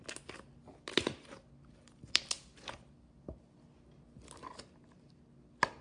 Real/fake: real